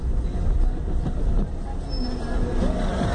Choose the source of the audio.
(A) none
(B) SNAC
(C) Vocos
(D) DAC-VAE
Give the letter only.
A